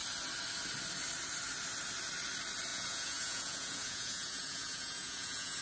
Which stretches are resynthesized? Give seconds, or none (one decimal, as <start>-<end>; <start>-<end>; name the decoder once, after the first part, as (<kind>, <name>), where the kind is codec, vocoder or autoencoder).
2.7-5.6 (vocoder, Vocos)